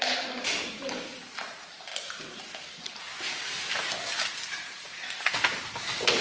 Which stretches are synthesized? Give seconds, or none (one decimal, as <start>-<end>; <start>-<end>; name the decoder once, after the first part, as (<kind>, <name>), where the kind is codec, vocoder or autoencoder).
none